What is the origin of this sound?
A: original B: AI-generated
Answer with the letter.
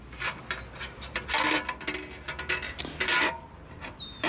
A